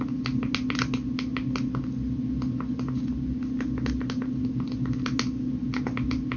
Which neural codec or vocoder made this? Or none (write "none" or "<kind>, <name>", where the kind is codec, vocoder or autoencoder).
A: none